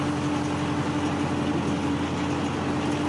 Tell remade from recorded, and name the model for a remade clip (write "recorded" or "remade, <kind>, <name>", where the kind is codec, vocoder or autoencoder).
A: recorded